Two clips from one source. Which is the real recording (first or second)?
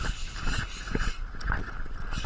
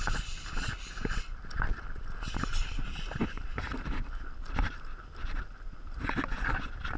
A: first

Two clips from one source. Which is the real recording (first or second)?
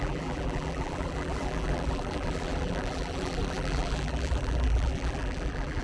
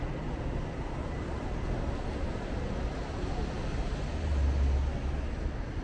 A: second